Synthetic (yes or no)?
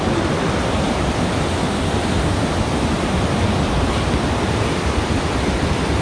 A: no